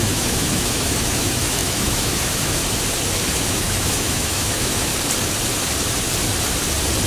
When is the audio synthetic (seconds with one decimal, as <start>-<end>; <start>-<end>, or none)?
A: 0.0-2.6; 3.3-4.9